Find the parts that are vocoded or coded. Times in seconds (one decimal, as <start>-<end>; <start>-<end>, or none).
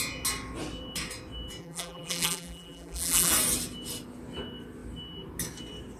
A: 1.6-3.3